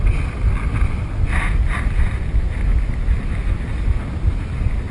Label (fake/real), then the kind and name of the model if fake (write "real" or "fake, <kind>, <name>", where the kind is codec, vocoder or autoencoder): real